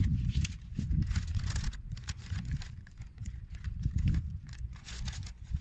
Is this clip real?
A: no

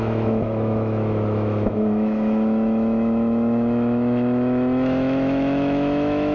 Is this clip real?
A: no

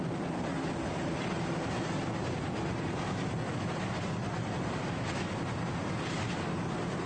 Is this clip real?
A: yes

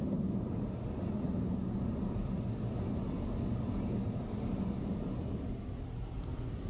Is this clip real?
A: yes